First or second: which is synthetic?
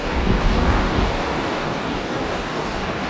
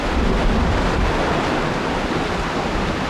first